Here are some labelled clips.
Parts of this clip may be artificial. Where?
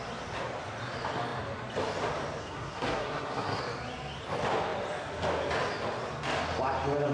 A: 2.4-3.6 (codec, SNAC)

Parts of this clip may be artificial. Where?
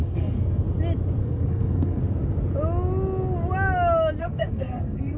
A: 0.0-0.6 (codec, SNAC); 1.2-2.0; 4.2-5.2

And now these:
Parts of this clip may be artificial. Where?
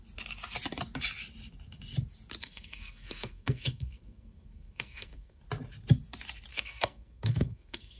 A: 2.4-5.4 (codec, SNAC); 6.5-8.0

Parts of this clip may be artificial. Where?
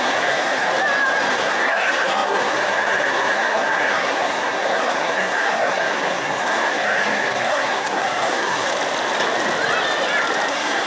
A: 0.0-0.7 (codec, SNAC); 1.3-8.7; 10.5-10.9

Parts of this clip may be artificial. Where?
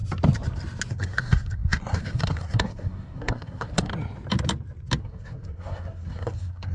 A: 0.9-3.9 (codec, SNAC); 5.0-6.7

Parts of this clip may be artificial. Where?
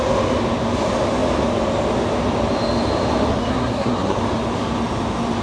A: 3.3-4.2 (codec, SNAC)